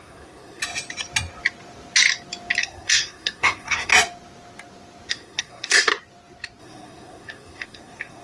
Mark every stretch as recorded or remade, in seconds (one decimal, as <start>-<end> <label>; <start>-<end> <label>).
0.0-0.6 remade; 0.6-2.6 recorded; 2.6-3.9 remade; 3.9-5.1 recorded; 5.1-5.9 remade; 5.9-6.6 recorded; 6.6-8.2 remade